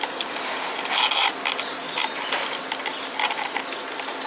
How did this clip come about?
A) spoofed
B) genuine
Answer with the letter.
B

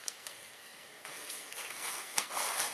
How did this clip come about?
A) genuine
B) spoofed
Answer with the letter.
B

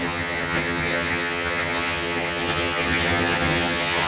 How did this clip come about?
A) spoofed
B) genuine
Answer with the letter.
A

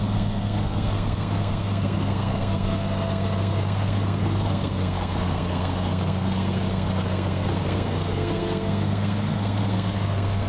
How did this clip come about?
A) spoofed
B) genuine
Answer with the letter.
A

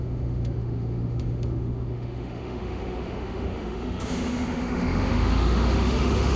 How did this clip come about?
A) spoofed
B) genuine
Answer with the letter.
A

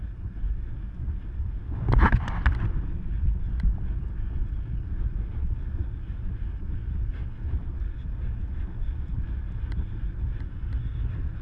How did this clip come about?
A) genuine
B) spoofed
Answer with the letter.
A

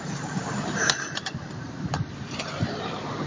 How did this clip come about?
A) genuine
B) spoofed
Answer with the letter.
B